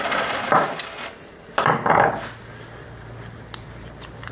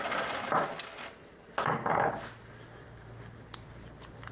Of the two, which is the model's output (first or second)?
first